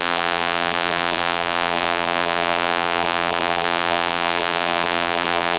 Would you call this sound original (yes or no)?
no